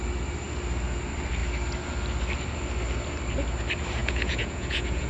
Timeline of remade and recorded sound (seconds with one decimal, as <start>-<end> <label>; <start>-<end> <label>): 0.0-4.0 recorded; 4.0-5.1 remade